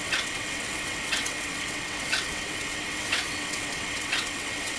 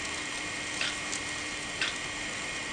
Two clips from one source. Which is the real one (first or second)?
second